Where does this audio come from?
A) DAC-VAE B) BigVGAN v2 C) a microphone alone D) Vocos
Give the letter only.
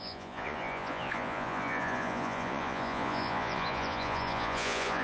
D